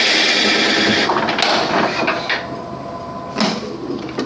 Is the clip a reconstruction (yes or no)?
no